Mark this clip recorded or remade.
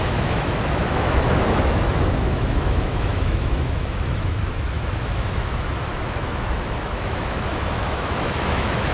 remade